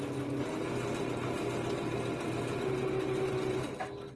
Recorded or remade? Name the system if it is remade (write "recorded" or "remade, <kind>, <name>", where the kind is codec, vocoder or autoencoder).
recorded